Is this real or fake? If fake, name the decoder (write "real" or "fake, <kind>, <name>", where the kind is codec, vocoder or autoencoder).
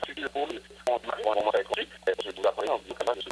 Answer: real